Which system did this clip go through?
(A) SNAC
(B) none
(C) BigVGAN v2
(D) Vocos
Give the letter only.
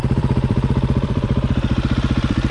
C